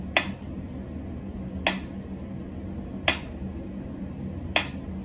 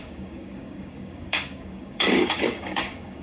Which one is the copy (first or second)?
second